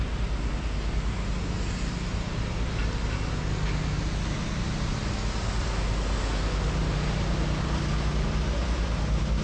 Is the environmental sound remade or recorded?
recorded